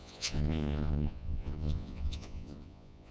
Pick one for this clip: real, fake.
fake